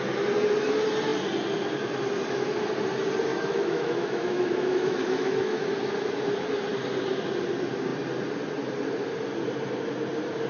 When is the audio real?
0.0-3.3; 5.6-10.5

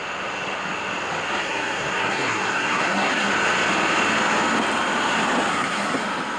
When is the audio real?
0.0-1.4; 3.3-5.5; 6.0-6.4

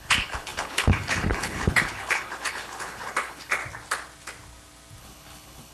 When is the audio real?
3.6-5.0

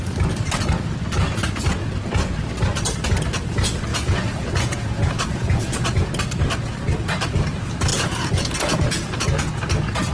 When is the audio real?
0.0-3.9; 6.1-7.9; 9.5-10.1